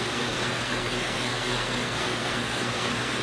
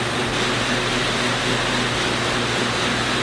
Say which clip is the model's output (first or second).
first